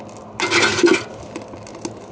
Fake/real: real